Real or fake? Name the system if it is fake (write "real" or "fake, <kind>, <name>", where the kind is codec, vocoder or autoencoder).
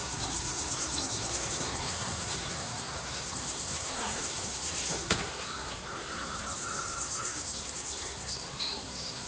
fake, codec, SNAC